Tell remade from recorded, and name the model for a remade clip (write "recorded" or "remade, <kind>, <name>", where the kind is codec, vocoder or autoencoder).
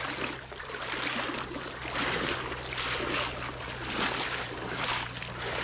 recorded